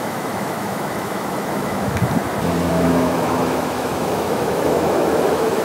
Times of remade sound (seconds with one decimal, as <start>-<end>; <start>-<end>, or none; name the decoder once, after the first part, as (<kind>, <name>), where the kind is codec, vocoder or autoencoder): 0.0-2.0 (autoencoder, DAC-VAE); 2.7-5.6